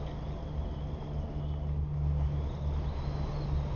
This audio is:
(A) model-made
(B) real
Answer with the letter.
B